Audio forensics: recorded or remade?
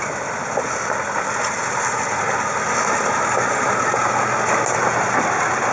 recorded